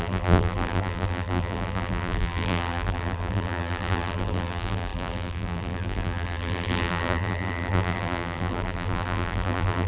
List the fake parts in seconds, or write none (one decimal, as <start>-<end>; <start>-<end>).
0.0-9.9

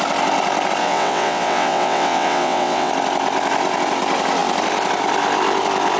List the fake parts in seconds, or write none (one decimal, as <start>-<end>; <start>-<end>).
0.8-2.9